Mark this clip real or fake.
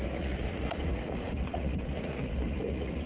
fake